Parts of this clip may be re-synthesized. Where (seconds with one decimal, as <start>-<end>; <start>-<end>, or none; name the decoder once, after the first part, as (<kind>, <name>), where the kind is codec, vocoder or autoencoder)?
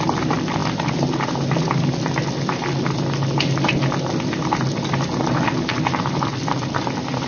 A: none